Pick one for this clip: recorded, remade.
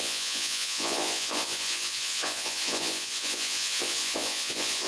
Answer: remade